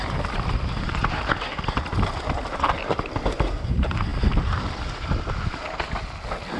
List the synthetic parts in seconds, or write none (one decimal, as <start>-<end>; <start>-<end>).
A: 0.0-1.0; 3.3-4.1